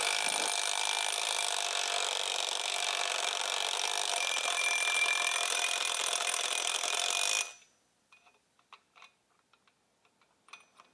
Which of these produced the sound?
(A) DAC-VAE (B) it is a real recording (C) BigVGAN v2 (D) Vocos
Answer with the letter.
B